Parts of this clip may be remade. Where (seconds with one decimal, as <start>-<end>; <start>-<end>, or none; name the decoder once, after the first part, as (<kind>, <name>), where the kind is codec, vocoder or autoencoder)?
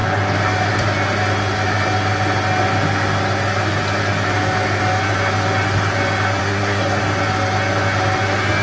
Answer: 6.4-7.0 (codec, SNAC)